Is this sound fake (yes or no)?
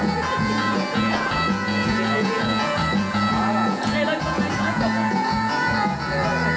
yes